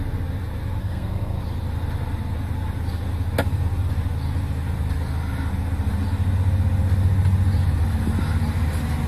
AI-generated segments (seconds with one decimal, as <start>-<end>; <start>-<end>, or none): 0.8-1.4